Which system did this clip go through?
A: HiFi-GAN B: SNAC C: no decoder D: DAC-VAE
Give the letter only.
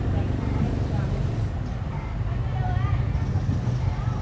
C